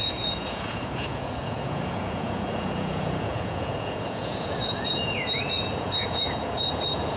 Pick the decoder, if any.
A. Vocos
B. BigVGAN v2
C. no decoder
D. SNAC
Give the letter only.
A